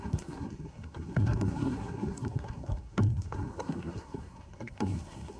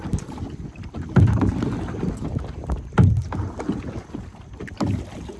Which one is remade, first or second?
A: first